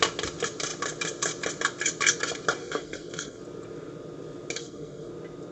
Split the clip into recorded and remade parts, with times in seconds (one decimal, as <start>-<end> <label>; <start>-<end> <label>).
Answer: 0.0-2.6 recorded; 2.6-3.4 remade; 3.4-4.6 recorded; 4.6-5.1 remade; 5.1-5.5 recorded